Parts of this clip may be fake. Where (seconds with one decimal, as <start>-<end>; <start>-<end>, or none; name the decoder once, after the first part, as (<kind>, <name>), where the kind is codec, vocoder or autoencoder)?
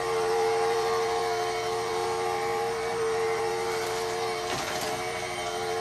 0.0-5.8 (vocoder, BigVGAN v2)